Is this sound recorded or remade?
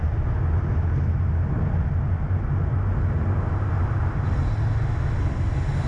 recorded